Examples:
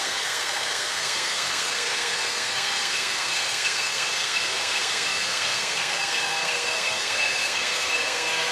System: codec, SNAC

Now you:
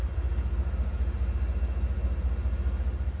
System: none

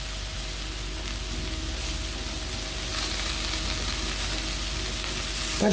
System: none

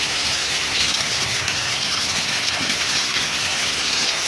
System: codec, SNAC